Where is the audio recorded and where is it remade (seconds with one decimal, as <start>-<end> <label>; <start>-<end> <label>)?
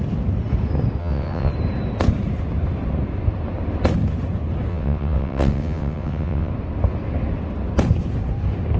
0.0-1.0 recorded; 1.0-1.5 remade; 1.5-4.7 recorded; 4.7-6.5 remade; 6.5-8.8 recorded